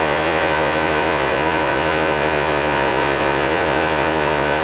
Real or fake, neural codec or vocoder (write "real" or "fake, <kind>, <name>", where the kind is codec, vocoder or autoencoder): fake, vocoder, Vocos